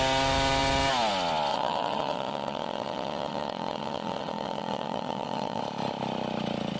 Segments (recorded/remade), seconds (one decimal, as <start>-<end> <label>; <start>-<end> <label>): 0.0-1.5 recorded; 1.5-5.6 remade; 5.6-6.8 recorded